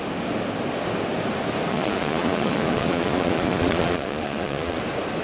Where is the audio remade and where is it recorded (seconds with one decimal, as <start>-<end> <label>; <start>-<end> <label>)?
0.0-1.7 recorded; 1.7-4.8 remade; 4.8-5.2 recorded